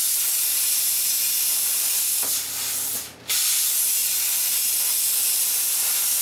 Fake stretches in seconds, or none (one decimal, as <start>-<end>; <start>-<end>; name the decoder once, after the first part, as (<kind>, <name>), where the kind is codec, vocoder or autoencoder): none